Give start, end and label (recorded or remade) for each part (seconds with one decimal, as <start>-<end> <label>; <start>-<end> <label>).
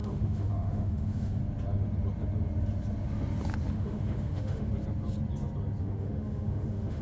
0.0-1.4 remade; 1.4-3.7 recorded; 3.7-4.7 remade; 4.7-5.8 recorded; 5.8-7.0 remade